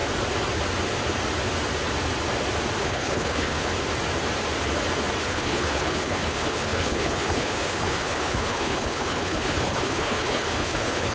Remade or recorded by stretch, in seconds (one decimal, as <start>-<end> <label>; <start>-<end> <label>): 0.0-2.8 recorded; 2.8-3.7 remade; 3.7-5.2 recorded; 5.2-11.1 remade